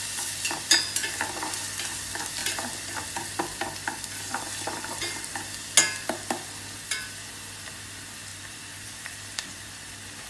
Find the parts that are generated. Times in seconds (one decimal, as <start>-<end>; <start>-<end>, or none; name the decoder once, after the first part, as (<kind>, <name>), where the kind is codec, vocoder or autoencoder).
8.3-9.7 (vocoder, BigVGAN v2)